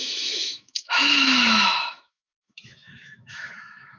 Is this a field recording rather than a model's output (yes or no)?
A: no